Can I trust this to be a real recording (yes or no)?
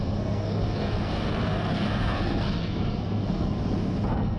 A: no